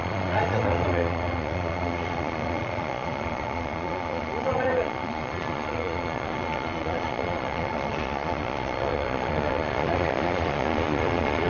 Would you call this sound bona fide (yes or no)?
no